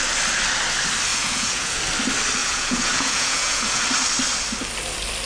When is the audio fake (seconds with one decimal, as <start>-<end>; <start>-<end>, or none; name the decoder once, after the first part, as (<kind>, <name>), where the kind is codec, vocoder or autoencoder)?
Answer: 1.1-1.8 (vocoder, Vocos); 2.4-3.8

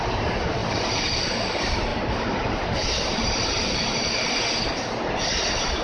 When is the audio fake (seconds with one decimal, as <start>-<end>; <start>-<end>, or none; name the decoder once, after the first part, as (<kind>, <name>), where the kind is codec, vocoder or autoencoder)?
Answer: 1.9-4.3 (vocoder, BigVGAN v2)